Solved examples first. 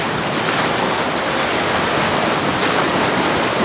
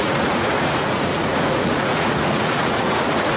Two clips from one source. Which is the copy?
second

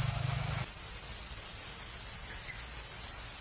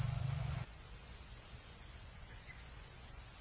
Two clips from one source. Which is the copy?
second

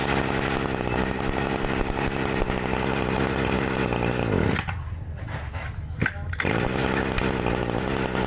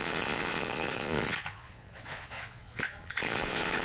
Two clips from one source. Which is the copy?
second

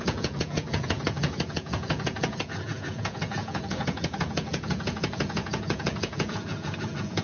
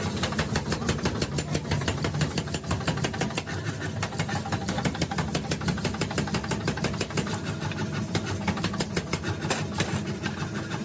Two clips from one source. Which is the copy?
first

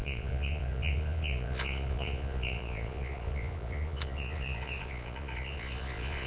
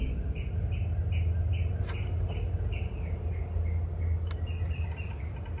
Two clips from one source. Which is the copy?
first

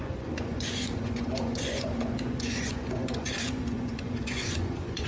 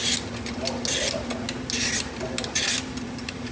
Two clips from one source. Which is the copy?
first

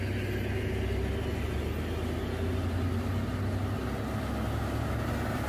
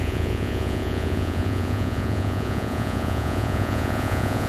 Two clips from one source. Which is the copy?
second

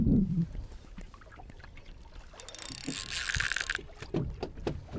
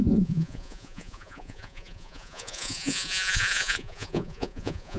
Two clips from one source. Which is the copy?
second